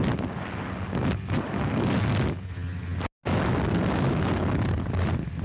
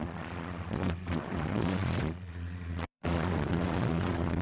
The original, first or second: first